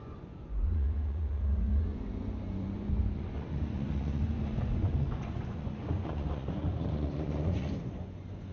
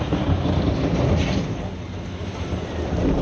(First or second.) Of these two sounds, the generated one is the first